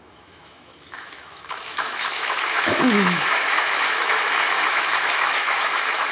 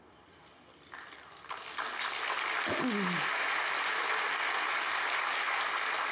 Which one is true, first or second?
second